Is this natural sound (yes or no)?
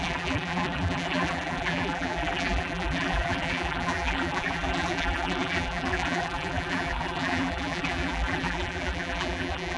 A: no